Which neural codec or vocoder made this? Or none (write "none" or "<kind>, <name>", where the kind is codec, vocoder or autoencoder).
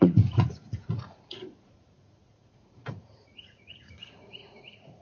vocoder, Vocos